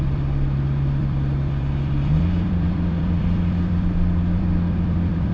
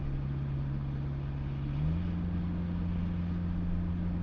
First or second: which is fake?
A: first